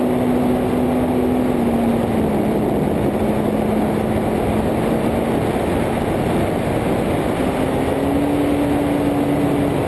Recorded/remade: recorded